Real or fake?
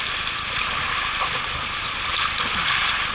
real